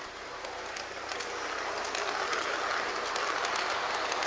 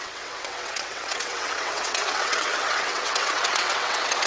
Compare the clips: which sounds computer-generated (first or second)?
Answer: second